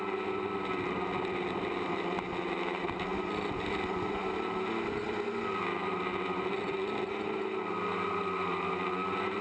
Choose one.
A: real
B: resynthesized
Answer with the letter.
A